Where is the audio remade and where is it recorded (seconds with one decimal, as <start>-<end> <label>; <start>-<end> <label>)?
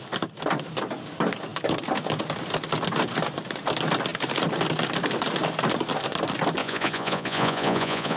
0.0-6.6 recorded; 6.6-8.2 remade